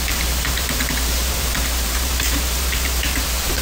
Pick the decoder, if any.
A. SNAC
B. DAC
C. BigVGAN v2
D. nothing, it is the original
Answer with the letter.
C